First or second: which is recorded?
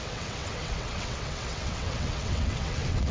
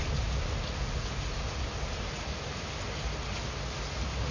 second